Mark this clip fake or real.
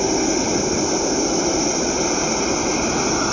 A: real